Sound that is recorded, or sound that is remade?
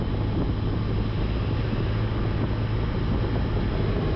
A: recorded